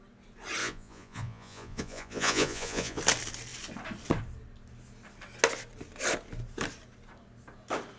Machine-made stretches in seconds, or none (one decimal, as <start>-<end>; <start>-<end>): 0.6-3.0